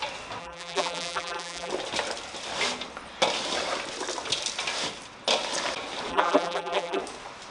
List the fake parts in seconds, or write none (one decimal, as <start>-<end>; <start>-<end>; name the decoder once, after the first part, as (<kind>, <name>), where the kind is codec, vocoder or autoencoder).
0.4-1.7 (vocoder, BigVGAN v2); 6.1-7.0